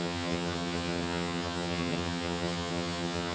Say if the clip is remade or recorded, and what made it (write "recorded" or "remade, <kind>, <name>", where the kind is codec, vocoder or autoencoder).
remade, vocoder, HiFi-GAN